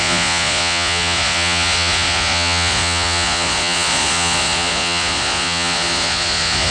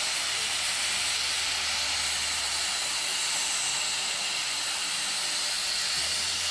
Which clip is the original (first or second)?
second